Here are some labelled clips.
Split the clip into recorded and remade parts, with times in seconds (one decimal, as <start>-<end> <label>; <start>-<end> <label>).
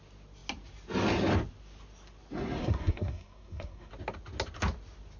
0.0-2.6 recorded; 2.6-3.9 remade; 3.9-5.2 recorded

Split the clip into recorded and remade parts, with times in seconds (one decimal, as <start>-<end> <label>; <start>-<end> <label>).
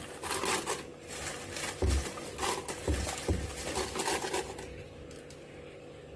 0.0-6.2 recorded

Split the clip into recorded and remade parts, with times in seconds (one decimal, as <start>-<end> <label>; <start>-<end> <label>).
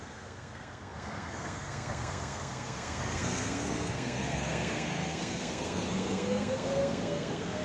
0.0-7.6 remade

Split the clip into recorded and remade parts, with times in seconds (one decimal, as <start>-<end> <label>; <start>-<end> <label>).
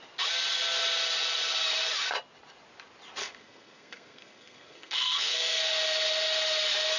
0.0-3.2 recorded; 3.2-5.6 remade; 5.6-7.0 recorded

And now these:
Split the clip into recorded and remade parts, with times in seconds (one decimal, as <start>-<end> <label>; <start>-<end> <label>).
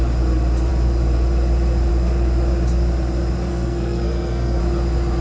0.0-3.5 recorded; 3.5-4.6 remade; 4.6-5.2 recorded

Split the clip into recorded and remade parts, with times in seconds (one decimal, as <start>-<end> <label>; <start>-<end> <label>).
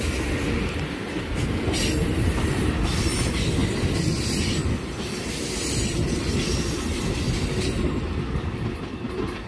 0.0-9.5 recorded